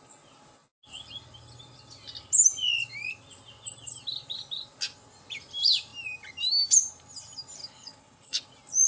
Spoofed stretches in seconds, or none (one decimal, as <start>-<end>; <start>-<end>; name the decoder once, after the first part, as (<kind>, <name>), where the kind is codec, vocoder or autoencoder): 7.6-8.4 (codec, HILCodec)